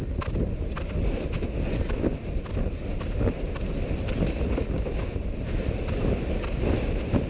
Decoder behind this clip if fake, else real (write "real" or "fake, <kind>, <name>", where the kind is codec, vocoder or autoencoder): real